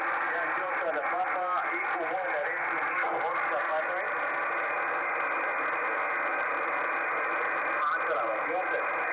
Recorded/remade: recorded